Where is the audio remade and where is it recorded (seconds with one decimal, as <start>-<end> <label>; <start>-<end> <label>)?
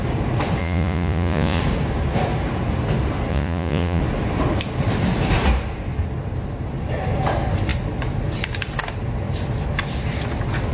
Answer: 0.0-0.6 recorded; 0.6-1.6 remade; 1.6-3.3 recorded; 3.3-4.0 remade; 4.0-10.7 recorded